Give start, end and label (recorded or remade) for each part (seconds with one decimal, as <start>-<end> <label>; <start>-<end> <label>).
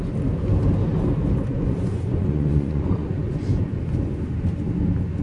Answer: 0.0-1.5 recorded; 1.5-3.8 remade; 3.8-5.2 recorded